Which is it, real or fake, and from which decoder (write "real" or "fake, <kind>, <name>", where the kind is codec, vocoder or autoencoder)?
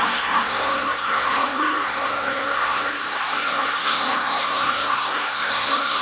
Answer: fake, codec, SNAC